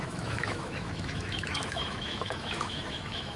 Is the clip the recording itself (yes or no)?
no